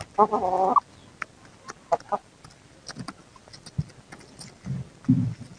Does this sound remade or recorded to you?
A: recorded